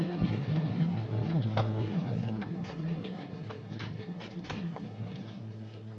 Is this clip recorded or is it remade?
remade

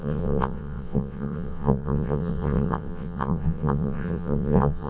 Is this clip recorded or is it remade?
remade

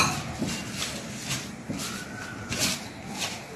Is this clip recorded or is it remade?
recorded